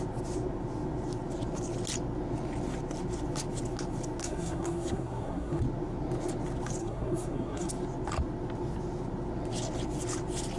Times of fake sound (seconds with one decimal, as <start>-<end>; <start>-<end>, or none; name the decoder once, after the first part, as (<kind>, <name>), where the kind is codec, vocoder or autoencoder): 4.2-5.6 (codec, SNAC); 6.8-7.7